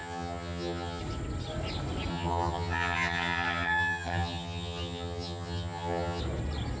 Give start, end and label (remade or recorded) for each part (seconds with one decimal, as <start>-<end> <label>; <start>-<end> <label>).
0.0-1.0 remade; 1.0-2.1 recorded; 2.1-6.2 remade; 6.2-6.8 recorded